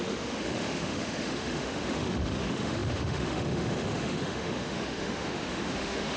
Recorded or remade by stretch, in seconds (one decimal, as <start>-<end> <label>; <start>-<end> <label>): 0.0-6.2 remade

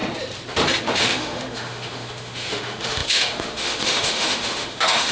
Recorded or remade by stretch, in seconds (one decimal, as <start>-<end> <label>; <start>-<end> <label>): 0.0-0.8 recorded; 0.8-5.1 remade

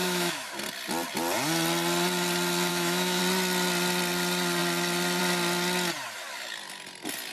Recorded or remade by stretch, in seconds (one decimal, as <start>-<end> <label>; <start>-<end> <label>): 0.0-0.5 remade; 0.5-2.7 recorded; 2.7-3.2 remade; 3.2-7.3 recorded

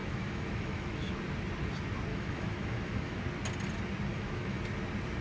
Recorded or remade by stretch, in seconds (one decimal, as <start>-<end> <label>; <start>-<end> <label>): 0.0-1.2 remade; 1.2-2.1 recorded; 2.1-3.2 remade; 3.2-4.1 recorded; 4.1-4.6 remade; 4.6-5.2 recorded

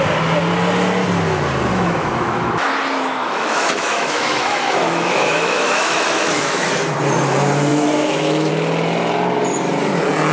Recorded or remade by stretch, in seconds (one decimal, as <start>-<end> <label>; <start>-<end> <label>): 0.0-1.7 recorded; 1.7-2.7 remade; 2.7-3.2 recorded; 3.2-6.7 remade; 6.7-7.7 recorded; 7.7-8.5 remade; 8.5-10.3 recorded

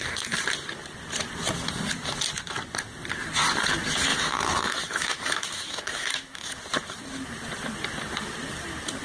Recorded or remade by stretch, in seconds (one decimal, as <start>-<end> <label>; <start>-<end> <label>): 0.0-4.1 recorded; 4.1-6.6 remade; 6.6-9.0 recorded

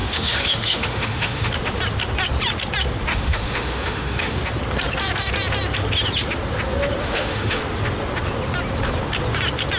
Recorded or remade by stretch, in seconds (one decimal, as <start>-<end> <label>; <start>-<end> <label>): 0.0-1.5 remade; 1.5-3.1 recorded; 3.1-4.4 remade; 4.4-7.0 recorded; 7.0-7.6 remade; 7.6-9.8 recorded

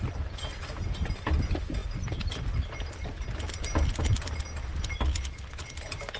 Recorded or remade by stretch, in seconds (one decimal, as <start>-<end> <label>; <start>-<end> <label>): 0.0-6.2 recorded